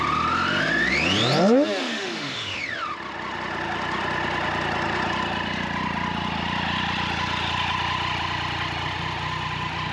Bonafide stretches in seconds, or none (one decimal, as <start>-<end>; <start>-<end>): 0.0-1.8; 2.6-9.9